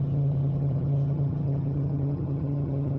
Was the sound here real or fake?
fake